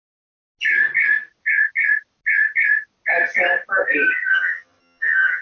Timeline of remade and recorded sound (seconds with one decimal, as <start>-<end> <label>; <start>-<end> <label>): 0.0-4.3 recorded; 4.3-5.4 remade